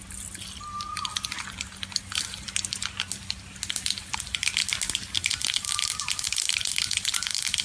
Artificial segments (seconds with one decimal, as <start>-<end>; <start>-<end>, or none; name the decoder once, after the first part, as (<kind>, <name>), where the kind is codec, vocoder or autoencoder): none